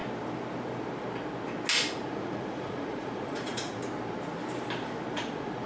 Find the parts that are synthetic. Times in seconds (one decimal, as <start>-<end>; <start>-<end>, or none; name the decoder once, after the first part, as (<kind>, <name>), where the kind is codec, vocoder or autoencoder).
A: 1.9-3.8 (vocoder, Vocos); 5.1-5.7